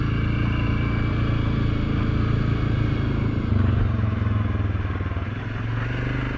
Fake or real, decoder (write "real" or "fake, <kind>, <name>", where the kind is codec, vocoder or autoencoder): real